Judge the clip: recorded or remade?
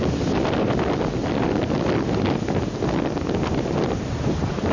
recorded